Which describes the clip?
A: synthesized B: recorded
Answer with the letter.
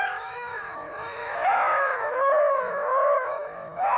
A